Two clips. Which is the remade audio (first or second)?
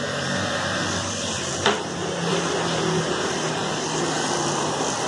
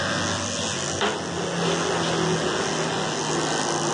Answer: first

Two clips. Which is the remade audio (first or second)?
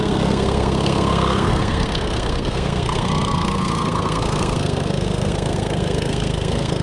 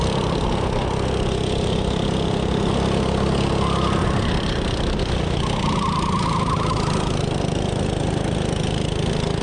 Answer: first